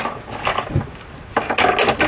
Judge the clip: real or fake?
real